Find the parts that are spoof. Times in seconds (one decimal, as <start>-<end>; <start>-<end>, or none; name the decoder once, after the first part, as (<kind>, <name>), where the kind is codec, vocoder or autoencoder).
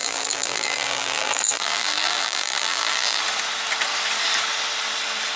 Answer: 0.0-3.2 (vocoder, BigVGAN v2)